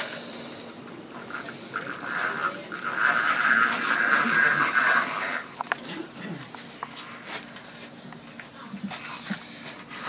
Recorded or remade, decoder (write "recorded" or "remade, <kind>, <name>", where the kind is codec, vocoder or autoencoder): recorded